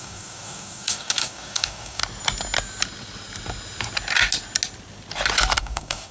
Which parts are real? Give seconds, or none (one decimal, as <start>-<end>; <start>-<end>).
2.0-5.6